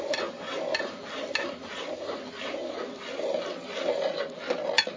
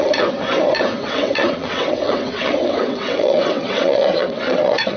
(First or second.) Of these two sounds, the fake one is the second